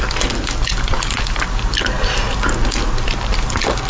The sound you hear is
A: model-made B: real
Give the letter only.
B